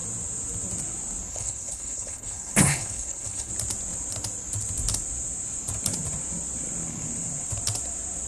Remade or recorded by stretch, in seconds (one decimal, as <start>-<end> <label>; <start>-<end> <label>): 0.0-1.3 recorded; 1.3-3.5 remade; 3.5-8.3 recorded